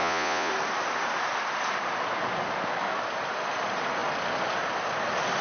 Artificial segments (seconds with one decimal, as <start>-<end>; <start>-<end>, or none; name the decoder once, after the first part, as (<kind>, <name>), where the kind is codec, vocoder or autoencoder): 0.0-0.5 (vocoder, Vocos)